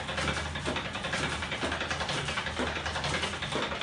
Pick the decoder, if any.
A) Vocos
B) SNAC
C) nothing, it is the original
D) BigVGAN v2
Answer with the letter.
C